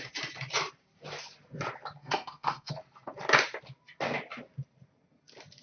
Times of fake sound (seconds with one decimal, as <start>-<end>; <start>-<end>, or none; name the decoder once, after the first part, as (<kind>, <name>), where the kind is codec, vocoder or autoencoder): 2.0-2.7 (codec, SNAC)

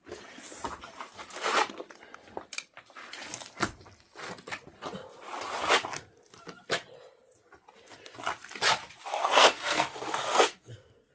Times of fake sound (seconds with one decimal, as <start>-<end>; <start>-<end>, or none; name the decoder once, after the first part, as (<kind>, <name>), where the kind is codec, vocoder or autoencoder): 9.1-11.1 (codec, SNAC)

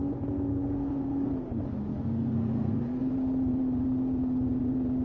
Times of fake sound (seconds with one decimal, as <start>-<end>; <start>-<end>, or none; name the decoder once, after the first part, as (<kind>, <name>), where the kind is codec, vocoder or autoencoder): 0.5-1.3 (codec, SNAC); 1.9-3.1

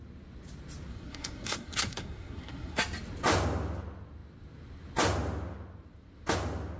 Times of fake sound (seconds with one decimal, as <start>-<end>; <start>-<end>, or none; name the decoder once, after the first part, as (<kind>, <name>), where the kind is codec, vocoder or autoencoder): 0.9-2.8 (codec, SNAC)